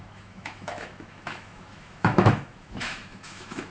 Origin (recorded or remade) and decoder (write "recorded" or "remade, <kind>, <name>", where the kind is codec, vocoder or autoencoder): remade, autoencoder, DAC-VAE